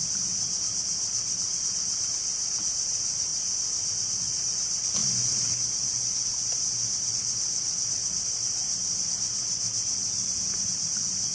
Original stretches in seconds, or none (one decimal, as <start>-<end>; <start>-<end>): 3.3-4.2